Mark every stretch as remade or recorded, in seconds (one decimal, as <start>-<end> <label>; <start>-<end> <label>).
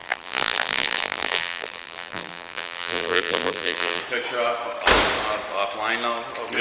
0.0-4.0 remade; 4.0-6.6 recorded